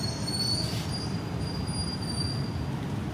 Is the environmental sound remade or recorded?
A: recorded